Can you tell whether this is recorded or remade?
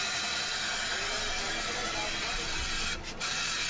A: recorded